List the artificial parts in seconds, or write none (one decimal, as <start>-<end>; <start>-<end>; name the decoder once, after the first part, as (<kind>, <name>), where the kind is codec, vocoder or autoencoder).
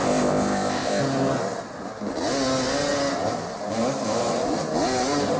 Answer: 0.0-1.0 (codec, ZipCodec)